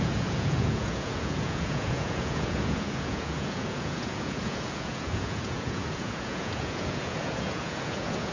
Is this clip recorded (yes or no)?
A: no